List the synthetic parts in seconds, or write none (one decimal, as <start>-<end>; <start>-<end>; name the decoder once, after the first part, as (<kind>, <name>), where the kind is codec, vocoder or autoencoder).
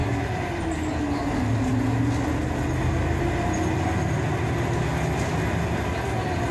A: none